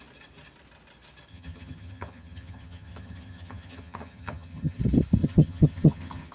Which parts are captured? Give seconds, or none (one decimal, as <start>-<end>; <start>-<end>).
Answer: 0.0-1.3; 4.8-5.2

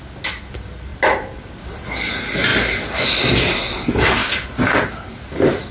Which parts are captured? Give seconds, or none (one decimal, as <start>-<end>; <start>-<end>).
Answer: 0.0-5.7

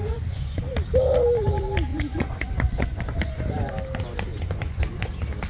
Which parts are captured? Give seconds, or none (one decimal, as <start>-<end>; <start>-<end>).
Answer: 0.6-1.9; 3.7-4.3; 5.1-5.5

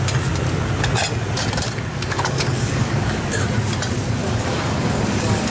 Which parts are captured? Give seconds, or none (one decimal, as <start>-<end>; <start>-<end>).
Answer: 0.0-1.9; 3.2-4.2

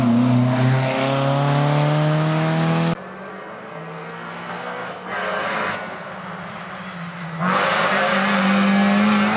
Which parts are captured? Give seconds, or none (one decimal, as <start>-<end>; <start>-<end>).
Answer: 0.0-3.3; 6.1-9.4

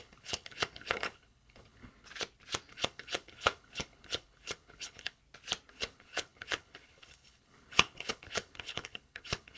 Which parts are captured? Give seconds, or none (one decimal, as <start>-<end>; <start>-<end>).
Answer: 1.9-2.7; 5.2-5.7